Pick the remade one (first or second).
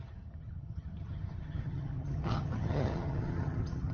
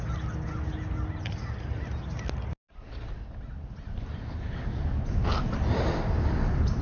first